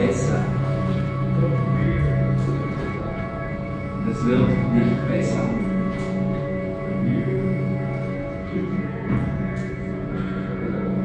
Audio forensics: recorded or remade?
remade